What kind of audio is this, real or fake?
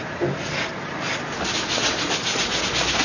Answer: real